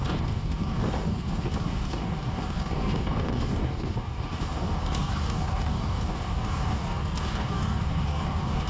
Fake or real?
fake